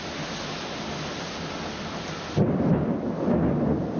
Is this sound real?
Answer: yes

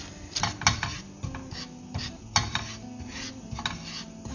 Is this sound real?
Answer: yes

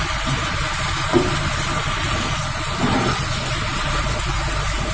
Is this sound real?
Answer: no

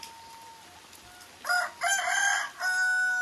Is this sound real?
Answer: yes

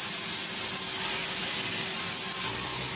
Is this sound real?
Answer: yes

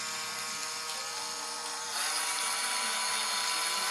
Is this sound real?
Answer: yes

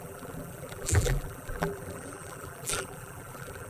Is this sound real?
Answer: no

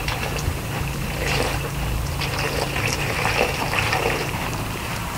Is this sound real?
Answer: no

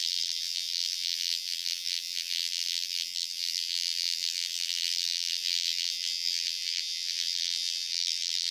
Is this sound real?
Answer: no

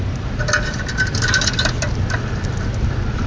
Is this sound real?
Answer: yes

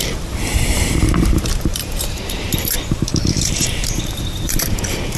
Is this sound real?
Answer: no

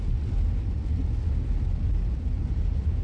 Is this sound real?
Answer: yes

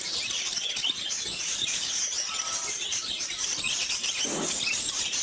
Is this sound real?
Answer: no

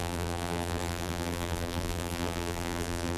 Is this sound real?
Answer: no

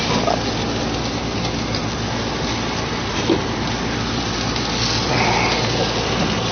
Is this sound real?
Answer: yes